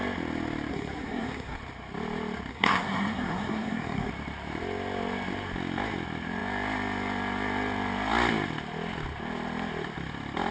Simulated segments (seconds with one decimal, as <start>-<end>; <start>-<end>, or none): 0.7-1.6; 2.5-4.1